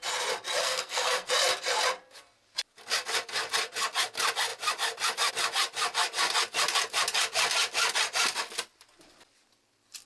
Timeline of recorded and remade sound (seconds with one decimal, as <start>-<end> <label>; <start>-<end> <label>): 0.0-0.6 recorded; 0.6-1.3 remade; 1.3-10.1 recorded